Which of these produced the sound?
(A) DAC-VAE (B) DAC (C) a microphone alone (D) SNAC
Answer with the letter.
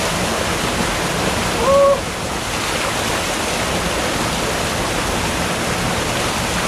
C